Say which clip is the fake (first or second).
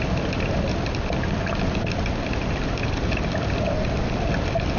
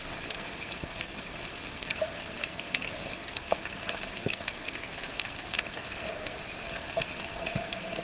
second